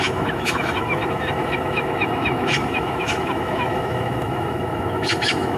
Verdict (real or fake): fake